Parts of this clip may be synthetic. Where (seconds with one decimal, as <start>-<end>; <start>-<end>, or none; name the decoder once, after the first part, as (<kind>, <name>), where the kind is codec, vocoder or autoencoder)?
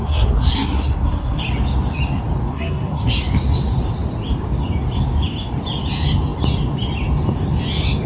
0.0-1.4 (codec, SNAC); 2.5-3.2